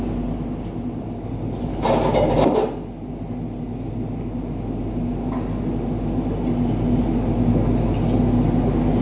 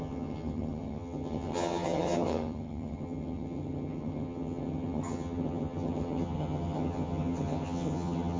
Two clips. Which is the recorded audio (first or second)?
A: first